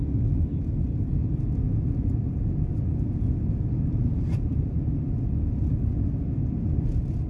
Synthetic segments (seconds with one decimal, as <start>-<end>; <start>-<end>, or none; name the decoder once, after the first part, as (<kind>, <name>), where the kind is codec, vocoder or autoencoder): 1.2-1.8 (vocoder, Vocos); 2.7-3.3